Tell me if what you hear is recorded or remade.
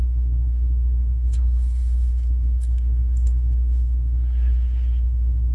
remade